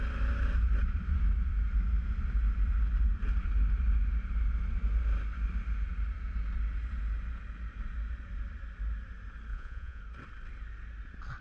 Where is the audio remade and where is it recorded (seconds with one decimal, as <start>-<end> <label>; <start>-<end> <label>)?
0.0-9.5 recorded; 9.5-10.0 remade; 10.0-11.4 recorded